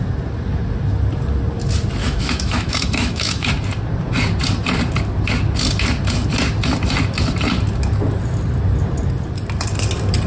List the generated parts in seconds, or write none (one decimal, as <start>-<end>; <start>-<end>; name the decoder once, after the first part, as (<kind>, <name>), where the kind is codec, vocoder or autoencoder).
2.0-3.5 (autoencoder, DAC-VAE)